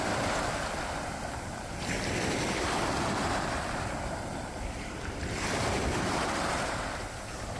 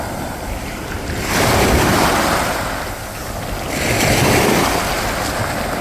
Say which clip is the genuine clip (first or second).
second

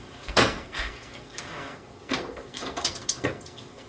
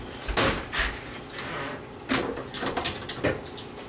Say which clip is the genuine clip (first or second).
second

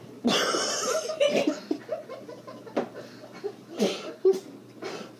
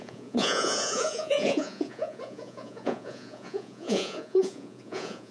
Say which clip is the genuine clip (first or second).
first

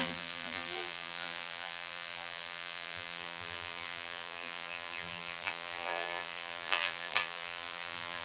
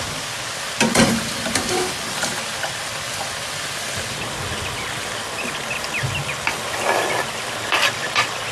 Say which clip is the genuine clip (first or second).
second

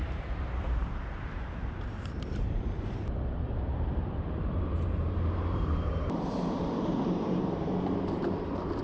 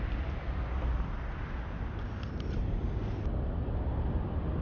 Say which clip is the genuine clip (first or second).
second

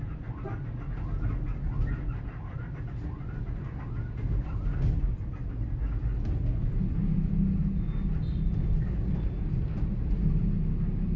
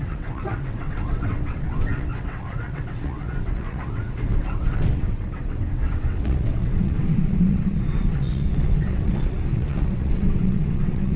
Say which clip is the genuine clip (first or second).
first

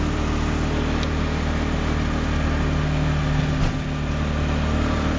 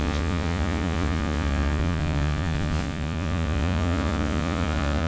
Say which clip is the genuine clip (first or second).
first